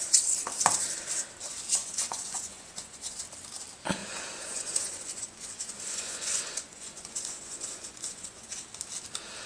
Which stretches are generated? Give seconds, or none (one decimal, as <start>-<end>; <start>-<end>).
1.8-3.2; 4.0-8.6

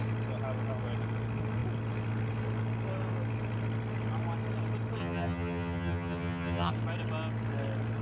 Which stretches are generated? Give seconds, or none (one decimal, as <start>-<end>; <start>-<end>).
5.0-6.7